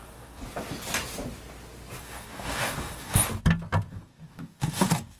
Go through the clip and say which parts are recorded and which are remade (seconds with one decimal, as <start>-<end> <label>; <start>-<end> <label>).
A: 0.0-0.4 remade; 0.4-2.0 recorded; 2.0-3.2 remade; 3.2-3.9 recorded; 3.9-5.2 remade